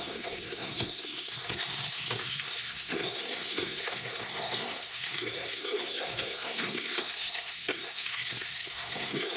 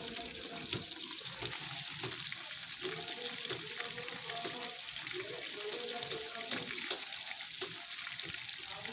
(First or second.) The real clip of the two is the second